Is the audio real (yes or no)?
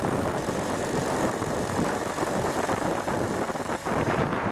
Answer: no